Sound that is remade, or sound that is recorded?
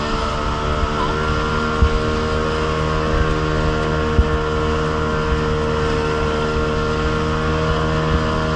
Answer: recorded